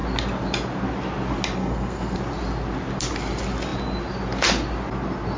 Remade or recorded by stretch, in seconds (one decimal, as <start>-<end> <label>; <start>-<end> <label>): 0.0-1.6 recorded; 1.6-2.2 remade; 2.2-5.4 recorded